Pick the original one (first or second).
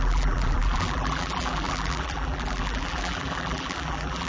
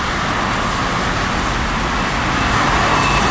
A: second